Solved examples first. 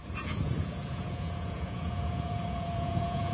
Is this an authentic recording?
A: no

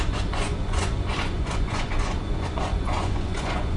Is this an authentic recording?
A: no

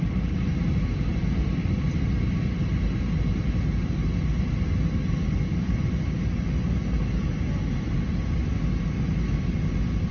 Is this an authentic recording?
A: yes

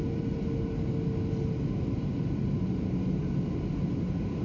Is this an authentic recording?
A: yes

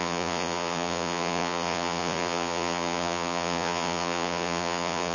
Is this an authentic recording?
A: no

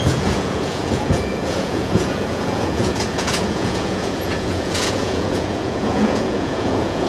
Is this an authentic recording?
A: no